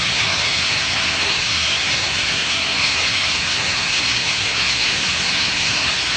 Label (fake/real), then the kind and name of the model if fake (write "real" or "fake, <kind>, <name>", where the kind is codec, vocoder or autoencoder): fake, codec, SNAC